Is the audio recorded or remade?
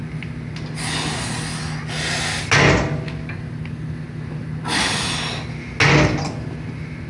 recorded